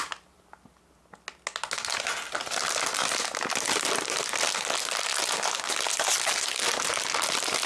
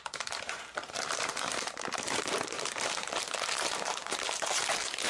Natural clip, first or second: first